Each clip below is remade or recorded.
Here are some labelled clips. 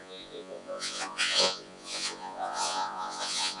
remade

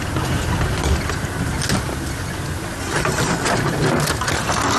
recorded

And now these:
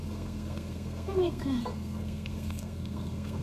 remade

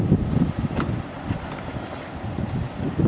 recorded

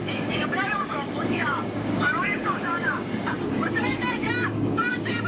remade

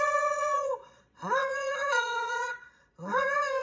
remade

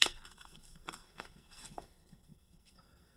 remade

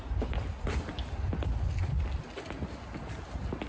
recorded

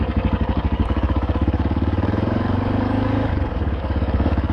remade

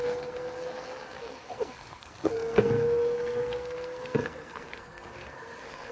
remade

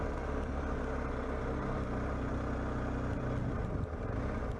recorded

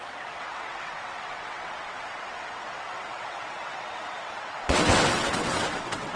remade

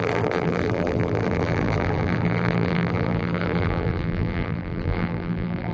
remade